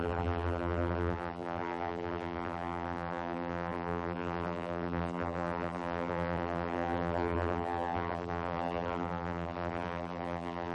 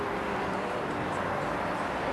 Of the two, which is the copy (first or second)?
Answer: first